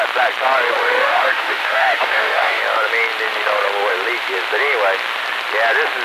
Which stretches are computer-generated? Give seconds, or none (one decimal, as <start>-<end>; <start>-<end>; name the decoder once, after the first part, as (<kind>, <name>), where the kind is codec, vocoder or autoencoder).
0.8-2.6 (autoencoder, DAC-VAE)